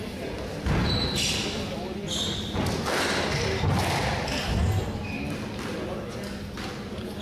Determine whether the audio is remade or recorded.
recorded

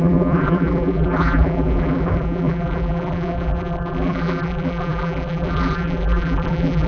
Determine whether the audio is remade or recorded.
remade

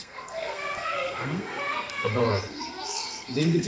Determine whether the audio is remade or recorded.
remade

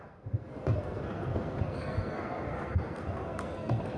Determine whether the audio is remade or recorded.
remade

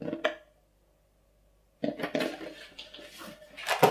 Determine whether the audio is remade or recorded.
recorded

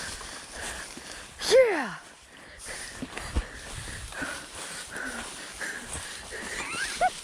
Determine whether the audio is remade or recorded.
recorded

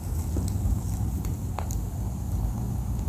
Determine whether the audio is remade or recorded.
recorded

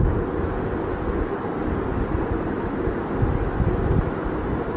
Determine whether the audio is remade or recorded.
recorded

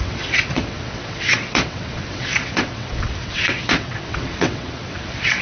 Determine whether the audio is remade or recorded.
remade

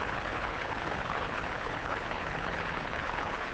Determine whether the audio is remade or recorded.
remade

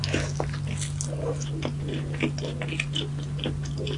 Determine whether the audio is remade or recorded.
recorded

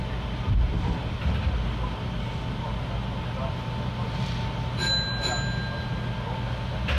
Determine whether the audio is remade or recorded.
recorded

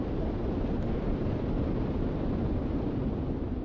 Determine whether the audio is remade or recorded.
recorded